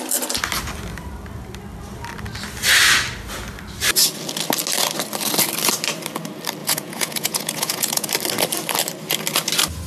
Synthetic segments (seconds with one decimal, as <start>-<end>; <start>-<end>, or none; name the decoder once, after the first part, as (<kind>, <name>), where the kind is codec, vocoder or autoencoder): 6.6-8.1 (vocoder, Vocos)